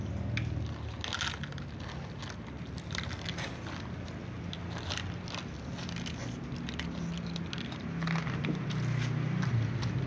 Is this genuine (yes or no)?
yes